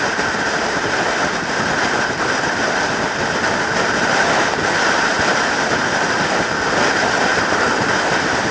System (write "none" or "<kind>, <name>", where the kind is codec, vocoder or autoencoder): vocoder, BigVGAN v2